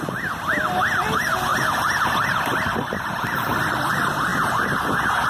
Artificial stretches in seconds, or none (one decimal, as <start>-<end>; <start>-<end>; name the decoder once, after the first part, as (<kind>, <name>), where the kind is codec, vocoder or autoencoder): 1.5-3.9 (vocoder, BigVGAN v2)